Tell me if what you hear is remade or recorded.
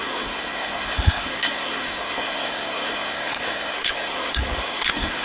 remade